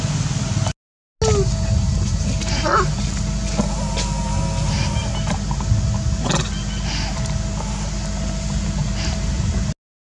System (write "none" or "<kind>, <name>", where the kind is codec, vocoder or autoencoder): none